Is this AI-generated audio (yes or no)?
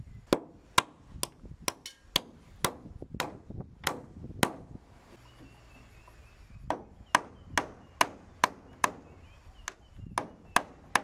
no